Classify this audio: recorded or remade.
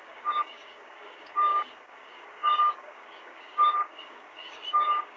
remade